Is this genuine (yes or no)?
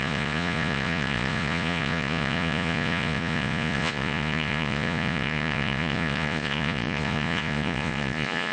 no